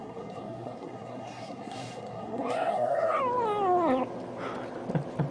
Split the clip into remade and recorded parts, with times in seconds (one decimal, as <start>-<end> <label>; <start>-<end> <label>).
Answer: 0.0-3.2 remade; 3.2-5.3 recorded